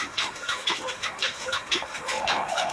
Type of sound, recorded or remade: remade